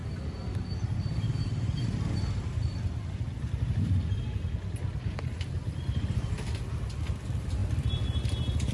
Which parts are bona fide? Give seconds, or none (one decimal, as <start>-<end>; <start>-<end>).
0.0-8.7

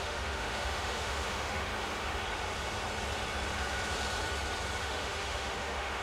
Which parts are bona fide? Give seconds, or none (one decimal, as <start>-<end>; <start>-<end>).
1.7-4.8

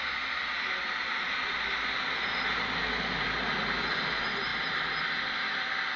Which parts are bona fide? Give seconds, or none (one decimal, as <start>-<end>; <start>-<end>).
0.0-6.0

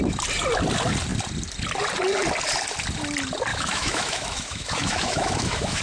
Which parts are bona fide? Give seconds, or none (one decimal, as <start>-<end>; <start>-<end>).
0.0-3.5

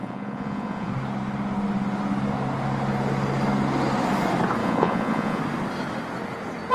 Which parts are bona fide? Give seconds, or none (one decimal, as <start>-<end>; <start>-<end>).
0.9-4.6; 5.4-6.7

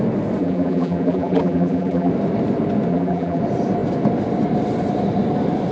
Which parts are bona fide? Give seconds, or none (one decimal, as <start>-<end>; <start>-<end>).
0.0-0.4; 2.1-2.9; 3.4-5.7